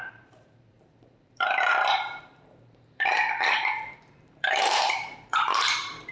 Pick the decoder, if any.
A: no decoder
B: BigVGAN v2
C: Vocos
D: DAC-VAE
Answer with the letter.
B